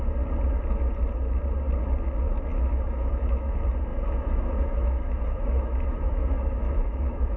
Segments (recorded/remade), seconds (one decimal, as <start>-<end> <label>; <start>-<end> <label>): 0.0-2.5 recorded; 2.5-3.5 remade; 3.5-3.9 recorded; 3.9-7.4 remade